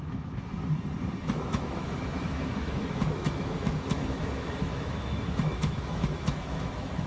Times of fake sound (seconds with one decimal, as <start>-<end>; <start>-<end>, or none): 0.0-0.5; 1.2-7.1